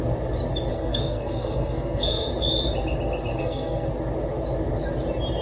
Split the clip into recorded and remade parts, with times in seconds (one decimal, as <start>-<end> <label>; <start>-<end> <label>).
0.0-0.7 recorded; 0.7-2.3 remade; 2.3-3.4 recorded; 3.4-3.9 remade; 3.9-5.4 recorded